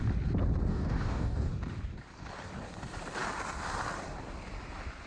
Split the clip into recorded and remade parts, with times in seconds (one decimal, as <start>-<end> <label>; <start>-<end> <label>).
0.0-0.7 recorded; 0.7-1.5 remade; 1.5-5.1 recorded